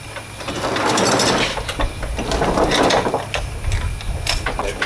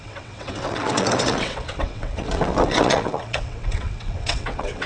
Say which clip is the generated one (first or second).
second